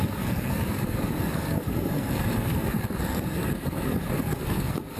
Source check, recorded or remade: remade